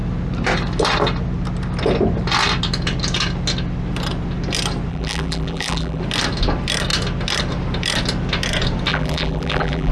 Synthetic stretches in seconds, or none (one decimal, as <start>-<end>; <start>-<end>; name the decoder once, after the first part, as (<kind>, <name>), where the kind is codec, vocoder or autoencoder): 4.9-6.0 (vocoder, BigVGAN v2); 8.9-9.9